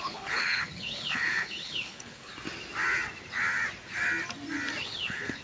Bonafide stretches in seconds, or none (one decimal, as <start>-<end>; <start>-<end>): 2.3-4.8